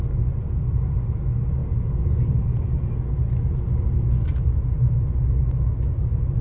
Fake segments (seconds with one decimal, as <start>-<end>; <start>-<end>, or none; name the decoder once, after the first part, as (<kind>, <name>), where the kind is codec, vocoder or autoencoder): none